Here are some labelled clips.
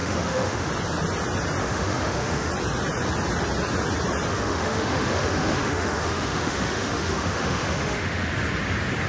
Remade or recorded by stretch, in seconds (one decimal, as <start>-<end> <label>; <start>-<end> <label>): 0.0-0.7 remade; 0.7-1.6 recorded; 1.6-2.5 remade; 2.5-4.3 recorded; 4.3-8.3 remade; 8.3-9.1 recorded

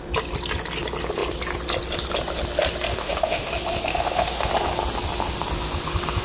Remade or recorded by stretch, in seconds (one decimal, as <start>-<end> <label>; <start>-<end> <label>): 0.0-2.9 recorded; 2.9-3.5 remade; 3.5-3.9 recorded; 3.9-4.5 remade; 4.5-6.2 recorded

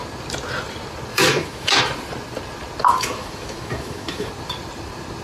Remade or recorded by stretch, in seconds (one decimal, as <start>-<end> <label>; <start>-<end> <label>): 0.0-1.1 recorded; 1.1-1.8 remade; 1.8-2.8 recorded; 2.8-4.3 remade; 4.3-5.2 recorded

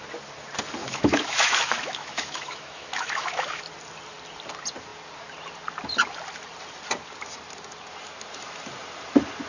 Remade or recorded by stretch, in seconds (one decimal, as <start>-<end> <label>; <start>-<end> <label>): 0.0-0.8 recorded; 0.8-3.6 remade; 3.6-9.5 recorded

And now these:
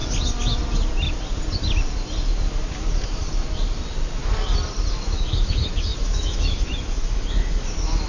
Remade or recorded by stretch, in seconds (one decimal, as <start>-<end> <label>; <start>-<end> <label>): 0.0-4.9 recorded; 4.9-8.1 remade